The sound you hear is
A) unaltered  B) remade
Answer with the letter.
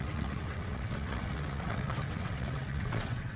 B